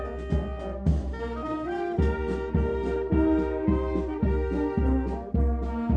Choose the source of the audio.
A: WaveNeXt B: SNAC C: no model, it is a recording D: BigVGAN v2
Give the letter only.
C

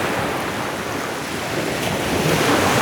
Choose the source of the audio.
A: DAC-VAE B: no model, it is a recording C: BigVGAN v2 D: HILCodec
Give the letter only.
B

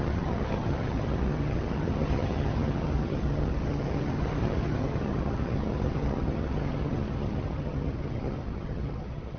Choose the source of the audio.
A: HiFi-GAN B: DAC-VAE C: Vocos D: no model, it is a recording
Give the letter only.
A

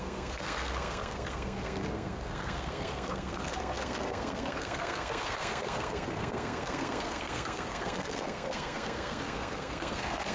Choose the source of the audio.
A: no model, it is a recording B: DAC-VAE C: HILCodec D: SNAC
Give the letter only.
D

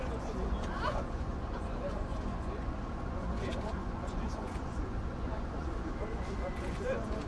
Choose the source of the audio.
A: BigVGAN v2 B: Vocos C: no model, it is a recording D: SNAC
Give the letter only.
B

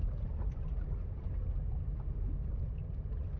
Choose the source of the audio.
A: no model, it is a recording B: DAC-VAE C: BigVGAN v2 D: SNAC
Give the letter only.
A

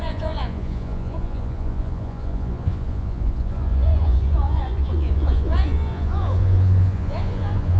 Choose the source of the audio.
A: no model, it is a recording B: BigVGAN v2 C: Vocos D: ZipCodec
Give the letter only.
C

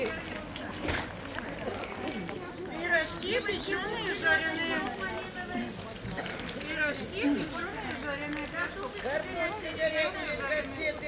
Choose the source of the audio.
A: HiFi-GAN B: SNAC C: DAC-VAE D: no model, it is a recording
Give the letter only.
D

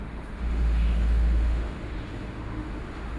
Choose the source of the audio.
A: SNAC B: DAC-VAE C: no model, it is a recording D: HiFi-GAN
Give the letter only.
B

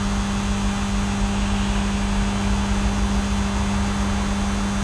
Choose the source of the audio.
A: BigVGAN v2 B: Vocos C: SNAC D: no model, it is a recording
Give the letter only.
D